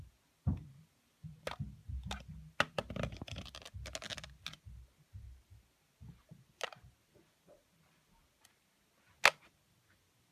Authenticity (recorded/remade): recorded